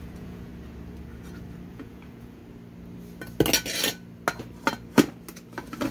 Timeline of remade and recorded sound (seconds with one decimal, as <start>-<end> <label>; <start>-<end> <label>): 0.0-0.5 remade; 0.5-1.7 recorded; 1.7-2.4 remade; 2.4-5.9 recorded